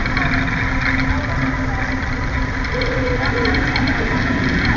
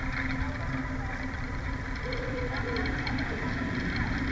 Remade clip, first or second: second